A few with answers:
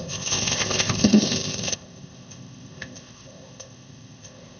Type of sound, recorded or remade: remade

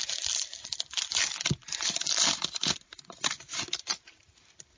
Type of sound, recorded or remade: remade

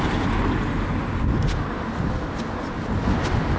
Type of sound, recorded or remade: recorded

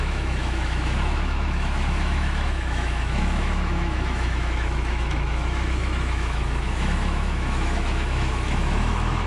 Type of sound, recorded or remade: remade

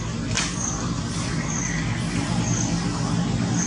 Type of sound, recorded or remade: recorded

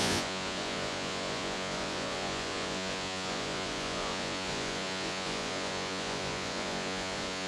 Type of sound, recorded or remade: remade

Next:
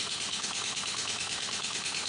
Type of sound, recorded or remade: remade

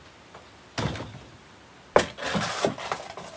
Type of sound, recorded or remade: recorded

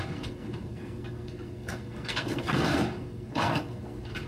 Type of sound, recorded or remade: remade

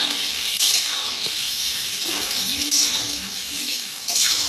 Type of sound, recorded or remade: remade